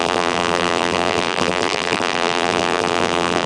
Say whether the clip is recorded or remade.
remade